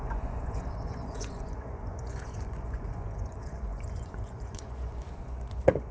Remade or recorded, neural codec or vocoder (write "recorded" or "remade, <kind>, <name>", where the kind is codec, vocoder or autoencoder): remade, vocoder, Vocos